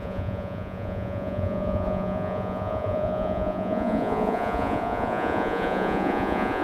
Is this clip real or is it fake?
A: fake